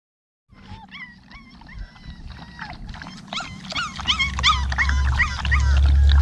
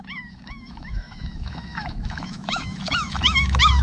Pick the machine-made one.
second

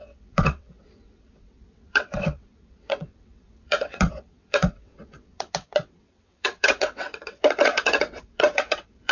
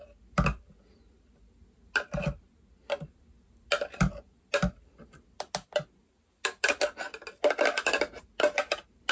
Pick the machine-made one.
first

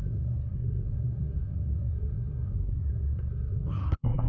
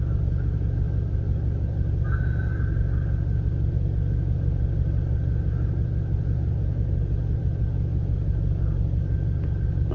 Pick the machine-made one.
first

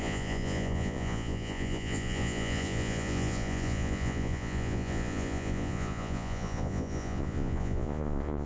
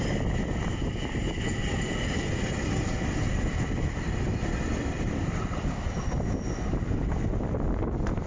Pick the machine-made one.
first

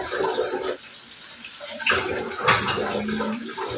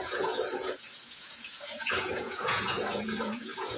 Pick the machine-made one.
second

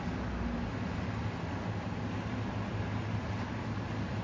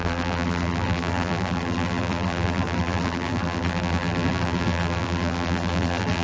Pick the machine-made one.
second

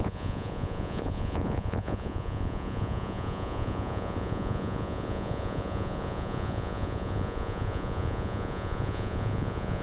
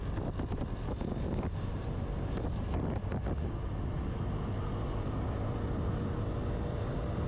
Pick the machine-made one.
first